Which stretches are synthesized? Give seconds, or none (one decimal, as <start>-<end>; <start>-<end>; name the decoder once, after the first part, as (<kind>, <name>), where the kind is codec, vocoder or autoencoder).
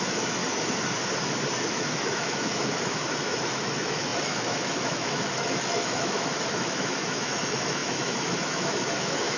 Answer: 0.0-0.4 (autoencoder, DAC-VAE); 1.6-9.4